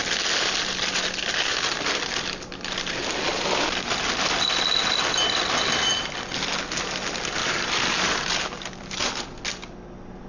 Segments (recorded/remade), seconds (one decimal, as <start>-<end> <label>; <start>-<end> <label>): 0.0-7.4 recorded; 7.4-9.1 remade; 9.1-10.3 recorded